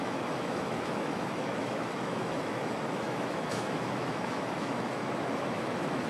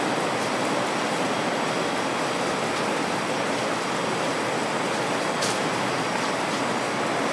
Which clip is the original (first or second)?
second